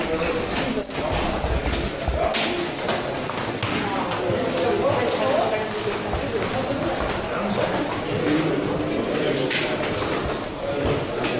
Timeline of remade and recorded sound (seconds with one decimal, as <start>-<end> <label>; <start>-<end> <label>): 0.0-9.6 recorded; 9.6-10.5 remade; 10.5-11.4 recorded